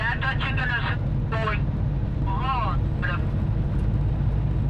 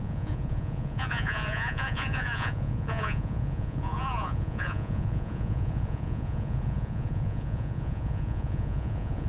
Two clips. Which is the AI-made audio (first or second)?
second